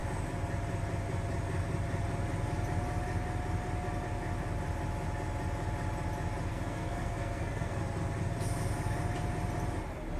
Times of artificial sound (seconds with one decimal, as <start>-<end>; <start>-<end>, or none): 6.5-7.8